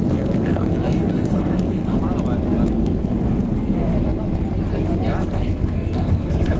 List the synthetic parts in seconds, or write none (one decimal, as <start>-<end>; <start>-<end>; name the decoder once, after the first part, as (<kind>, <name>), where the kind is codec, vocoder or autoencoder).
0.0-2.0 (codec, SNAC); 2.7-3.9; 5.2-6.6